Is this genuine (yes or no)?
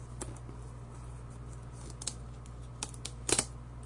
yes